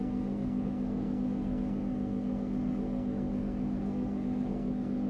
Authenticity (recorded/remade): remade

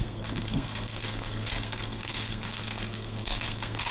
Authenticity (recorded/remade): remade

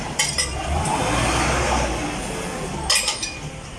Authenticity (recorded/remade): recorded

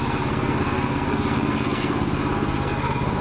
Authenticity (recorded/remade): remade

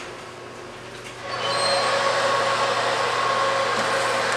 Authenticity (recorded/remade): recorded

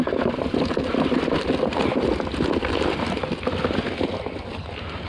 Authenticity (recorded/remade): recorded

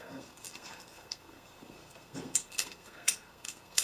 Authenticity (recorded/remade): remade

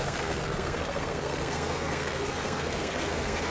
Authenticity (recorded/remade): remade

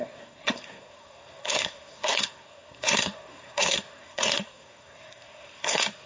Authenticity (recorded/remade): remade